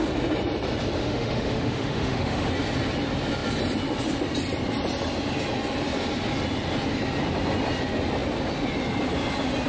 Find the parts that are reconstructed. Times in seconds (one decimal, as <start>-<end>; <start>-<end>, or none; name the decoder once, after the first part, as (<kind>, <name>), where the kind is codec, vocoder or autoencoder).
1.0-2.5 (autoencoder, DAC-VAE)